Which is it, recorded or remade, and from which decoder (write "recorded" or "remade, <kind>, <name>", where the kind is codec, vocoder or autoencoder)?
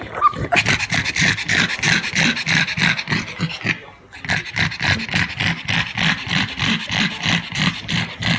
recorded